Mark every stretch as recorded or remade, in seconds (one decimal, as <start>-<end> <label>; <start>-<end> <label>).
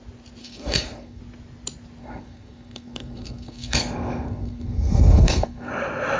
0.0-0.4 recorded; 0.4-1.2 remade; 1.2-2.0 recorded; 2.0-5.7 remade; 5.7-6.2 recorded